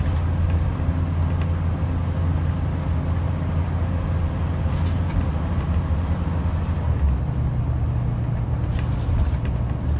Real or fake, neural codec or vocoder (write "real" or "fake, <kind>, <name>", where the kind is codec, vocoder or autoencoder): real